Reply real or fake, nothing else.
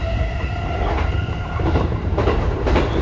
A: fake